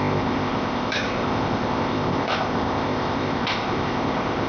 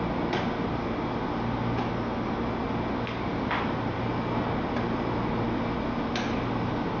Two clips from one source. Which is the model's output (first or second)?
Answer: first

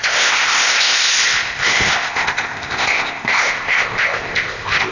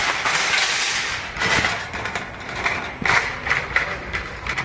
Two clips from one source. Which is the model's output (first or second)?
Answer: first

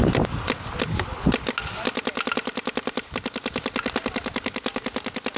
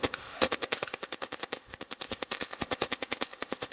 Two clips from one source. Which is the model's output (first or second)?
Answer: second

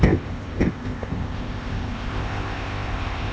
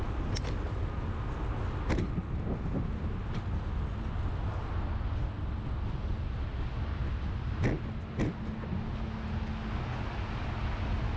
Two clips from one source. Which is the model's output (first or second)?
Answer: first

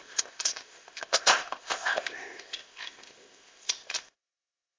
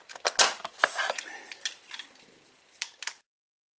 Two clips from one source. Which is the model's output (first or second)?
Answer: first